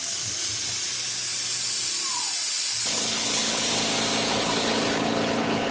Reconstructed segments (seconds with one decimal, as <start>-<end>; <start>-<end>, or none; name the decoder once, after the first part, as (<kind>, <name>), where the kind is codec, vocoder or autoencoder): 2.7-3.7 (codec, HILCodec); 4.3-5.7

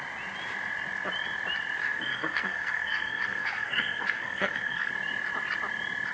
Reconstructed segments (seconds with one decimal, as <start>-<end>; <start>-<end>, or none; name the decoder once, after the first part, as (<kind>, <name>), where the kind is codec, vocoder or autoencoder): 1.8-4.9 (codec, SNAC)

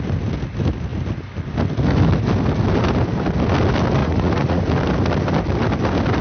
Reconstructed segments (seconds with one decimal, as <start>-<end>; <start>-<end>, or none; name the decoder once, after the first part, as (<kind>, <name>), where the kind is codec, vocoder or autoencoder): 4.0-4.6 (vocoder, Vocos)

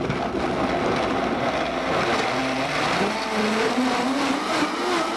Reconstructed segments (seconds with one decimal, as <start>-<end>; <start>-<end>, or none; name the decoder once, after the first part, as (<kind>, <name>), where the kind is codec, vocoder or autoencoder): 2.4-2.9 (vocoder, BigVGAN v2)

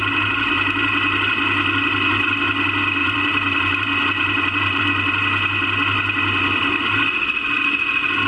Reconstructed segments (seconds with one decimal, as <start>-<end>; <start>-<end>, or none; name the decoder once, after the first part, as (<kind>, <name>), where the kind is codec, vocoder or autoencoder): 3.0-4.8 (vocoder, BigVGAN v2)

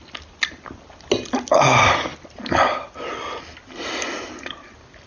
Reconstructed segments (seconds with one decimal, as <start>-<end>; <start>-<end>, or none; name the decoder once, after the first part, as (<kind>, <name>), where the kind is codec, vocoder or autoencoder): none

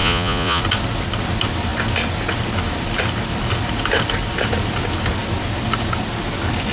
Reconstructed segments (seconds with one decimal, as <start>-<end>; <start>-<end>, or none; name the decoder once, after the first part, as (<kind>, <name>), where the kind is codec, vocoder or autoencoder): 0.0-0.6 (vocoder, Vocos)

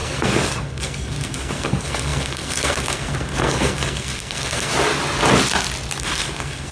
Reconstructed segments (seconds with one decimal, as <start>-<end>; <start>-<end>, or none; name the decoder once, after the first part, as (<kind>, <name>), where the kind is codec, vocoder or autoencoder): 0.0-4.7 (codec, SNAC); 6.0-6.7